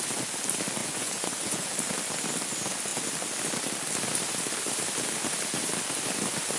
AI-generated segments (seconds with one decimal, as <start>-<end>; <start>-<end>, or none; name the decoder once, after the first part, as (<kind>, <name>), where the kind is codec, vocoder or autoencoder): 0.8-1.7 (vocoder, Vocos)